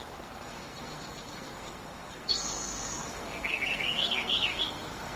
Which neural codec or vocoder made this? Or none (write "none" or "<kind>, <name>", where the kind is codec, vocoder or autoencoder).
codec, SNAC